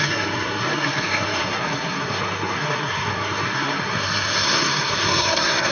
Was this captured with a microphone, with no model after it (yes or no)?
no